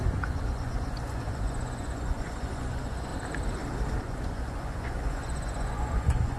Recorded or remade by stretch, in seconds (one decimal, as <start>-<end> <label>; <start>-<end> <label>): 0.0-3.1 remade; 3.1-4.0 recorded; 4.0-6.4 remade